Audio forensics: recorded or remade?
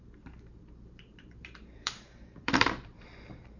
remade